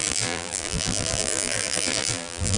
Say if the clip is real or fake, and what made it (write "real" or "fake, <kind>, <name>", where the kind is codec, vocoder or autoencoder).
fake, vocoder, BigVGAN v2